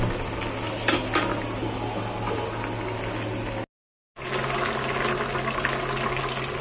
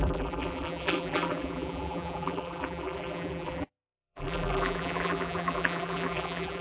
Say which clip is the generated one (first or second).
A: second